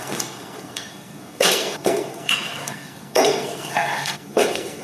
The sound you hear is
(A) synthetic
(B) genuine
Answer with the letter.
A